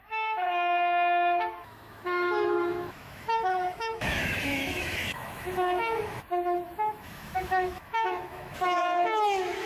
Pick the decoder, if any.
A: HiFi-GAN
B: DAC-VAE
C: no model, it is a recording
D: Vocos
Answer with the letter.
B